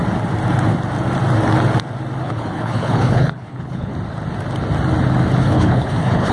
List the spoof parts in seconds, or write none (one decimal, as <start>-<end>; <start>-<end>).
2.2-3.9; 5.4-6.3